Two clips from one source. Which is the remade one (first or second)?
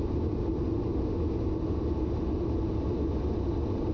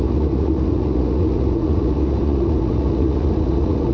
second